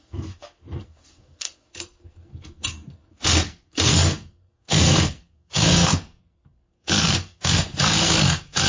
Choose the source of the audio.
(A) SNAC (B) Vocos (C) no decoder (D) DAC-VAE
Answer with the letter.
A